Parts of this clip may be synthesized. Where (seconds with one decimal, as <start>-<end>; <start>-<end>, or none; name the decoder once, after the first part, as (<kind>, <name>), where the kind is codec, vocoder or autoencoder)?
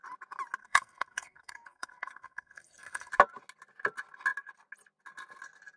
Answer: 0.6-3.1 (codec, SNAC)